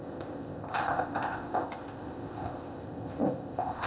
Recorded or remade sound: remade